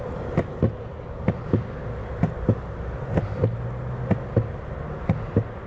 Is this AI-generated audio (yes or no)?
no